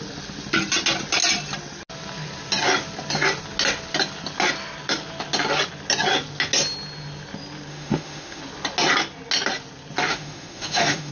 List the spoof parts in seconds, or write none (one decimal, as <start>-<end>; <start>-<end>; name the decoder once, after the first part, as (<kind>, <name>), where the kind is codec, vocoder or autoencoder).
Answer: 7.7-8.4 (autoencoder, DAC-VAE); 10.1-11.1